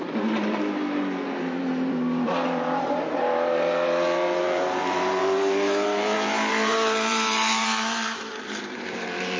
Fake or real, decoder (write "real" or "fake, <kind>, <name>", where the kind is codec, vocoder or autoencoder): fake, vocoder, BigVGAN v2